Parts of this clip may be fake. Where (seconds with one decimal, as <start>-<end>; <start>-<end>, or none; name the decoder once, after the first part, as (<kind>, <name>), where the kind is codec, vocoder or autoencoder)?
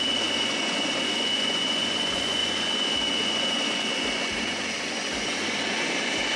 0.0-6.4 (vocoder, Vocos)